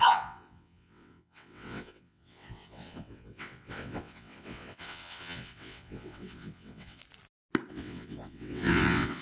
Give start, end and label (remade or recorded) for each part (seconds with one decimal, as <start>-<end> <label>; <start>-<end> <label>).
0.0-7.0 remade; 7.0-7.7 recorded; 7.7-9.2 remade